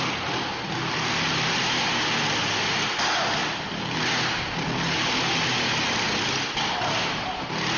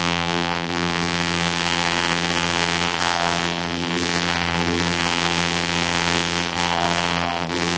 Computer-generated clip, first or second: second